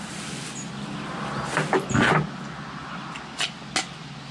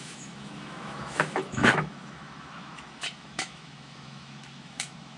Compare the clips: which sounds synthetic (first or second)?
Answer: second